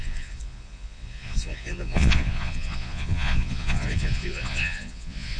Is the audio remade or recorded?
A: remade